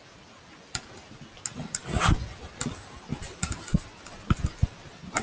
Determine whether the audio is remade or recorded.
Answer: recorded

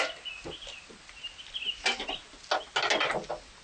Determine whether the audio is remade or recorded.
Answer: recorded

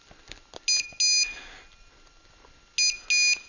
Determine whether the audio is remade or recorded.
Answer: recorded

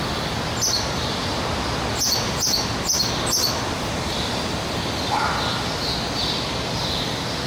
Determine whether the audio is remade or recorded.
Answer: recorded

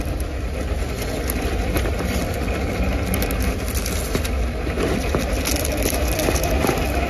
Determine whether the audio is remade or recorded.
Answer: recorded